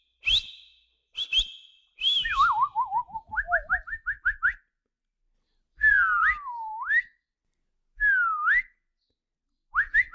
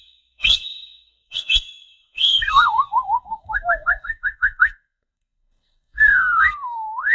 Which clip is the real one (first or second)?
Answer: first